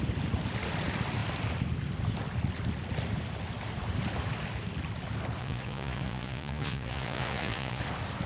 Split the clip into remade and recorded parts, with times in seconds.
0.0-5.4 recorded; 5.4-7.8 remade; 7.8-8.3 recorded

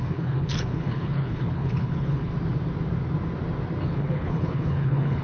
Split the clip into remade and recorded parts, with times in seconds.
0.0-2.3 remade; 2.3-3.8 recorded; 3.8-5.2 remade

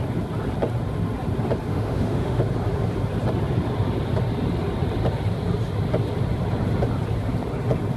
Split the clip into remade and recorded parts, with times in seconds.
0.0-1.7 recorded; 1.7-2.4 remade; 2.4-8.0 recorded

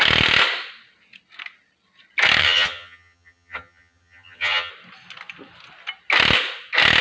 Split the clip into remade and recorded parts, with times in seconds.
0.0-2.4 recorded; 2.4-4.7 remade; 4.7-7.0 recorded

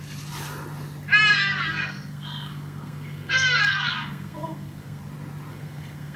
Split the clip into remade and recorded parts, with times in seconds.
0.0-1.3 recorded; 1.3-5.0 remade; 5.0-5.5 recorded; 5.5-6.2 remade

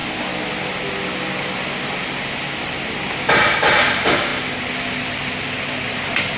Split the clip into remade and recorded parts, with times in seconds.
0.0-6.4 recorded

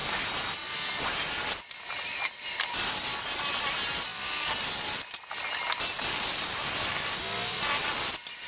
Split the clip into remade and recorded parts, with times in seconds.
0.0-8.5 recorded